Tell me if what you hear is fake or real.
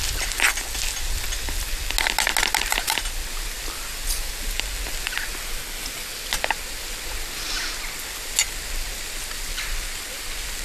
real